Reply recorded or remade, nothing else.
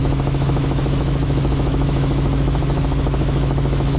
remade